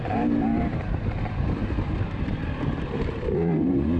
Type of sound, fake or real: fake